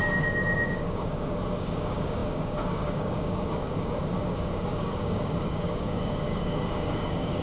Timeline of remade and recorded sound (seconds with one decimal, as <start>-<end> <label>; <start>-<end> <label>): 0.0-7.4 remade